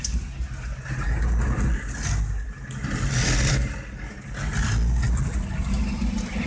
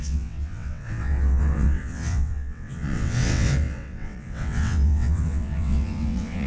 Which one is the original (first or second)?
first